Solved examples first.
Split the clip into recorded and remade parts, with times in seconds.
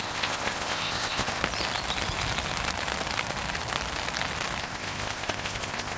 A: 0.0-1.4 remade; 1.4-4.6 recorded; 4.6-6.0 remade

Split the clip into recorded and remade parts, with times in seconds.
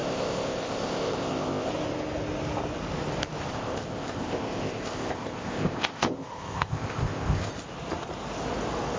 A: 0.0-1.7 remade; 1.7-3.5 recorded; 3.5-7.5 remade; 7.5-9.0 recorded